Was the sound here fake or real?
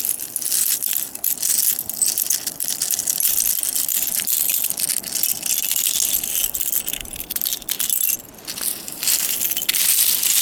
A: real